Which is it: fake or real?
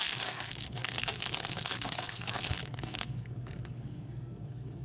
fake